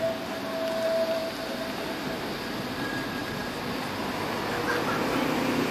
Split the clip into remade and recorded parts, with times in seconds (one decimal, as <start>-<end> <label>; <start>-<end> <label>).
0.0-5.7 recorded